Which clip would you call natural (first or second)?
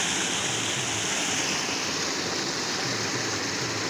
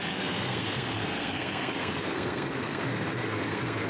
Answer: first